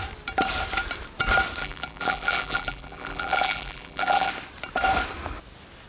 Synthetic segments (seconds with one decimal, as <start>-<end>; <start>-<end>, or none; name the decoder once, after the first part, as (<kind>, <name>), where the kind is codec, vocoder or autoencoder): 1.6-4.3 (vocoder, BigVGAN v2)